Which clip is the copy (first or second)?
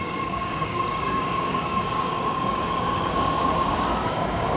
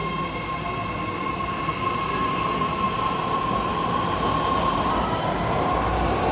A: first